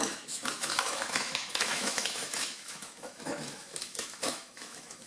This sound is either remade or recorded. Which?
remade